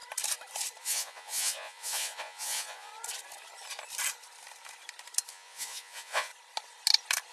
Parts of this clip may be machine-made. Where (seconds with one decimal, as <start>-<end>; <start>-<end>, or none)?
0.8-2.9; 5.3-6.3